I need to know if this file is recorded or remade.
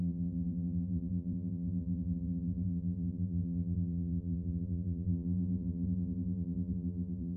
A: remade